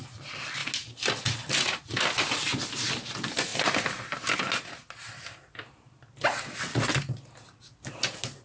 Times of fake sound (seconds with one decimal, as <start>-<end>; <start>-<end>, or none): none

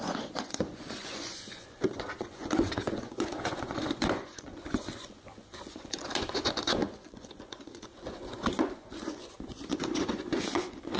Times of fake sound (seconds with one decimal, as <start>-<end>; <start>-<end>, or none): 0.0-11.0

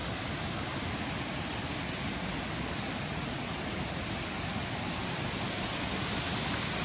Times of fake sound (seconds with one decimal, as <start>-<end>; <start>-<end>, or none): none

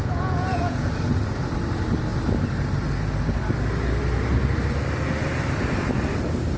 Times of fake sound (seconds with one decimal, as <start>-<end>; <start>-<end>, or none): 0.0-0.9

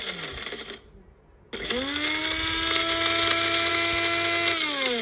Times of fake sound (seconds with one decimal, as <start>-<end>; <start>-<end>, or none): none

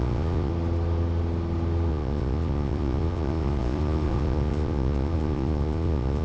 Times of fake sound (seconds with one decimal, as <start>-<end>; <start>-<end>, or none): 0.0-0.5; 1.9-6.2

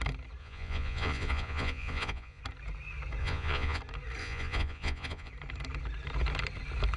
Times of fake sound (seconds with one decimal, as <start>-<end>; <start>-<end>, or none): 0.4-2.4; 3.2-3.8; 4.2-5.3